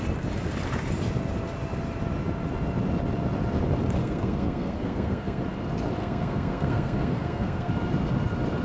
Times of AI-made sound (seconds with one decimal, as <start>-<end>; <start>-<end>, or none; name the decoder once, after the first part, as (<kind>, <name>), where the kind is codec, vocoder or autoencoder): 4.0-5.4 (codec, SNAC); 6.0-7.7